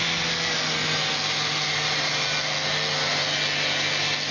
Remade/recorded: recorded